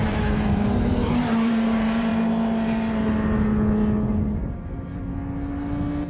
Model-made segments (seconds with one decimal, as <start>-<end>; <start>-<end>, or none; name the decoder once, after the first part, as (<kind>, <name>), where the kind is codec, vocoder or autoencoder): 0.0-2.1 (vocoder, BigVGAN v2)